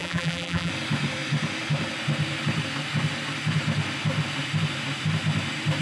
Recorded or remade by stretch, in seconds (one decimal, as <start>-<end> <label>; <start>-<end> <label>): 0.0-0.7 remade; 0.7-5.8 recorded